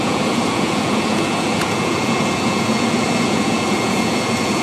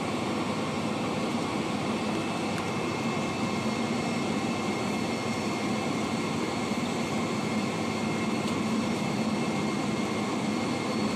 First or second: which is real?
second